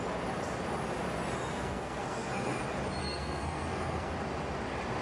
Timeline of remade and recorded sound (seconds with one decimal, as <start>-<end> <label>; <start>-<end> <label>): 0.0-1.5 recorded; 1.5-2.6 remade; 2.6-3.0 recorded; 3.0-4.1 remade; 4.1-5.0 recorded